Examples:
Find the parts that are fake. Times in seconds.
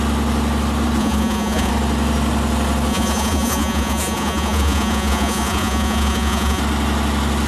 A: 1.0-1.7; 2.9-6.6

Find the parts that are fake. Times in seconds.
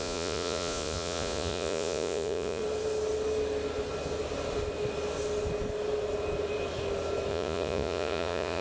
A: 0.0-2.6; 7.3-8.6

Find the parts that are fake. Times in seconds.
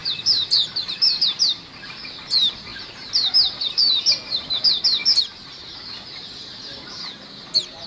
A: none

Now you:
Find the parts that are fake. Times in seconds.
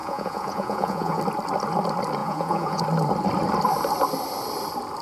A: 0.0-1.2; 2.2-2.8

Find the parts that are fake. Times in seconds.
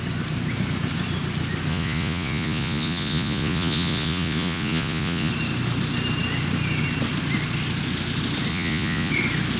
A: 1.7-5.3; 8.5-9.1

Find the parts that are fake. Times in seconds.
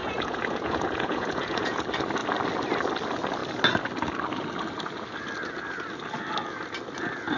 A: 0.0-1.8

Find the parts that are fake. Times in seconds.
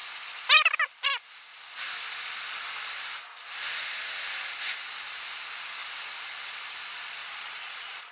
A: 7.2-8.1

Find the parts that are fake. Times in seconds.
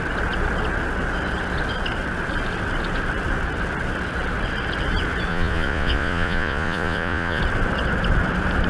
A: 5.3-7.4